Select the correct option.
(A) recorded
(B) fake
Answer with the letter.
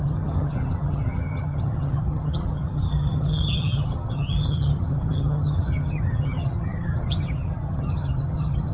B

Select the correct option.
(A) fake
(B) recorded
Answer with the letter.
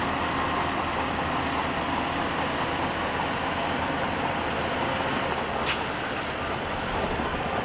B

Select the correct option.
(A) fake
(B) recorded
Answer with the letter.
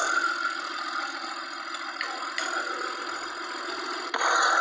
B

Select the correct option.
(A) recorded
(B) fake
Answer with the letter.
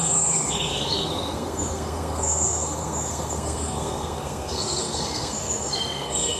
B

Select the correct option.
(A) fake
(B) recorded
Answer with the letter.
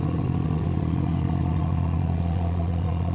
A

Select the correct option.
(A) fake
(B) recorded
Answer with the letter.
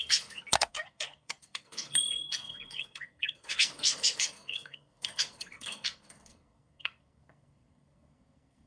A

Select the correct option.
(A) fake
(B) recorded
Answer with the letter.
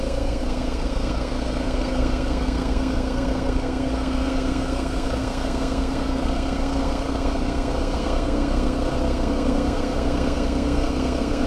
A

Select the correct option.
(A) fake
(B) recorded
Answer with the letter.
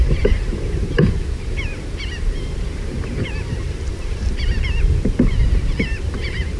A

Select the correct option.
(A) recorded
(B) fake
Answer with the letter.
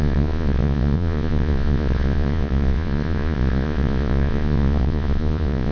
B